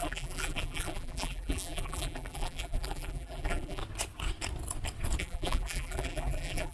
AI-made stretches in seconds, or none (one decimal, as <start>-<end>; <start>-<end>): 0.0-3.8; 5.2-6.7